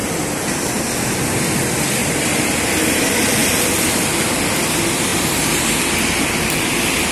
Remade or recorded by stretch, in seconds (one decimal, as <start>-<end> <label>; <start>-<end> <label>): 0.0-2.0 recorded; 2.0-2.7 remade; 2.7-3.4 recorded; 3.4-4.2 remade; 4.2-5.1 recorded; 5.1-6.3 remade; 6.3-7.1 recorded